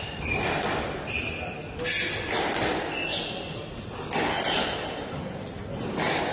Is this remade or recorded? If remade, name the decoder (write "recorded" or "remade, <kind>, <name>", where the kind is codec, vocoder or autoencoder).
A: recorded